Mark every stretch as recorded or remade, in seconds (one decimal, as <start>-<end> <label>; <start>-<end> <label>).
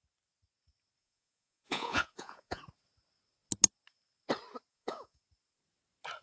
0.0-1.0 recorded; 1.0-2.6 remade; 2.6-4.7 recorded; 4.7-5.2 remade; 5.2-6.2 recorded